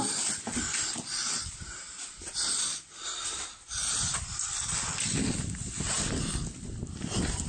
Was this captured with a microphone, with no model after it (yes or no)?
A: yes